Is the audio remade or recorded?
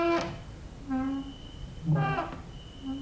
recorded